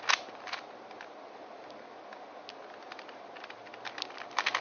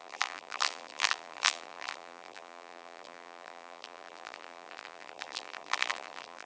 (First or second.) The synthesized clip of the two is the second